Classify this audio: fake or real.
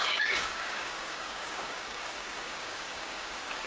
fake